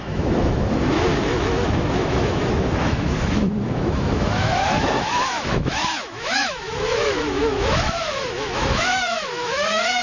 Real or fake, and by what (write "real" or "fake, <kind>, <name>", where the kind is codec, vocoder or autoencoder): fake, autoencoder, DAC-VAE